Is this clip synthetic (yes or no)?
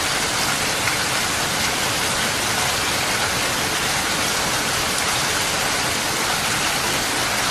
no